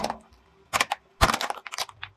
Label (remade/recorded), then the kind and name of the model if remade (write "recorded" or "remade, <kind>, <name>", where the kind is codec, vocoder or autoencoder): recorded